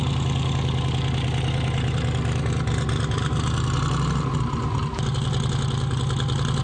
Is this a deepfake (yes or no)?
no